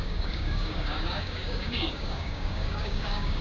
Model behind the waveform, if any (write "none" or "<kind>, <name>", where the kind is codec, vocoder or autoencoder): codec, DAC